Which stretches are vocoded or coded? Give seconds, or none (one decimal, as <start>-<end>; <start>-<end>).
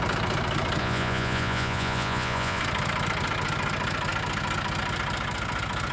0.8-2.6